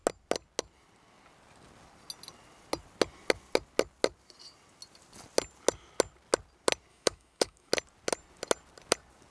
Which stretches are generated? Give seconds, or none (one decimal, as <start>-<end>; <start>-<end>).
6.9-7.7